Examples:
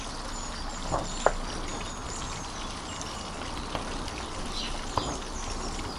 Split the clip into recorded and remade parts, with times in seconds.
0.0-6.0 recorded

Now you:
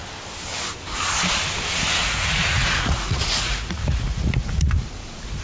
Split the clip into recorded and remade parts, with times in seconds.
0.0-2.0 recorded; 2.0-5.4 remade

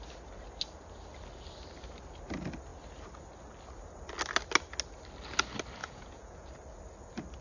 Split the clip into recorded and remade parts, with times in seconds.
0.0-5.8 recorded; 5.8-6.5 remade; 6.5-7.4 recorded